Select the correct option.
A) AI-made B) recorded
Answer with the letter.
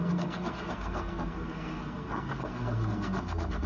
A